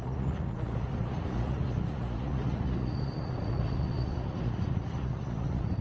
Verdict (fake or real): fake